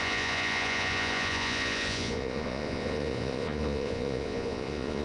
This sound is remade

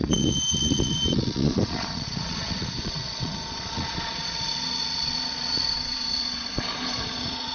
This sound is remade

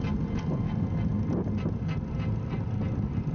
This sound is recorded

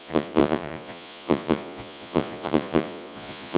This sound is remade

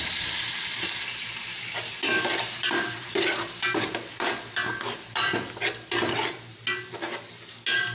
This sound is recorded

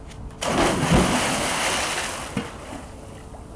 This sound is recorded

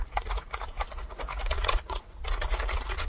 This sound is remade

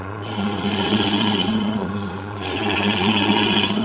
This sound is remade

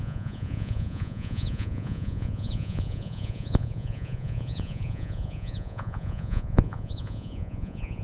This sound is remade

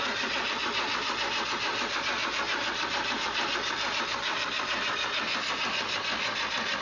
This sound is recorded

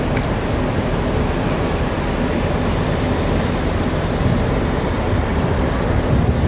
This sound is recorded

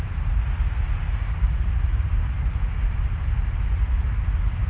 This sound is recorded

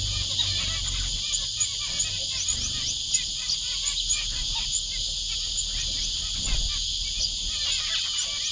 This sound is recorded